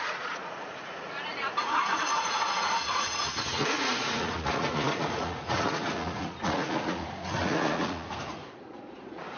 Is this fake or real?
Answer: fake